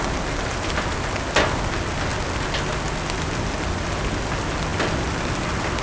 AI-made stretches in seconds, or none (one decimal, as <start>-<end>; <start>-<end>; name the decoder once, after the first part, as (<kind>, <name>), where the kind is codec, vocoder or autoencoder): none